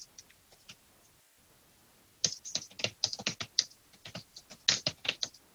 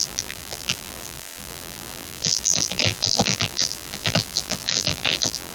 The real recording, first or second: first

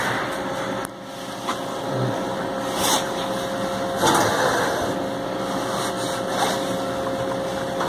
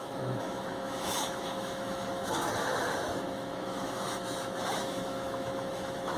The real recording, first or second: first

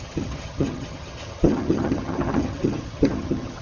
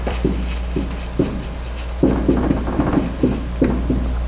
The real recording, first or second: second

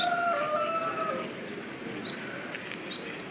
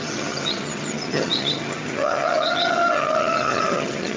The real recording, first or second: first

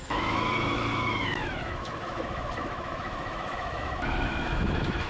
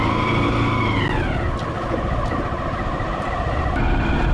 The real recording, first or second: second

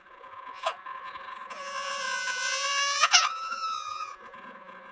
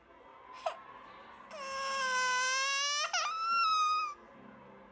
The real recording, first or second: second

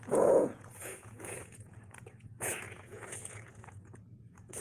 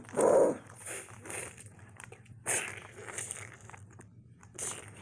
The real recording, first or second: second